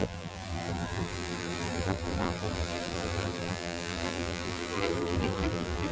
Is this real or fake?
fake